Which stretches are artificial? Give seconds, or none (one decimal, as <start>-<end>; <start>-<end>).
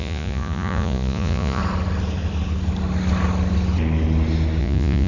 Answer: 0.0-1.6; 4.6-5.1